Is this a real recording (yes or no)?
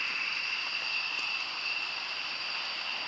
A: yes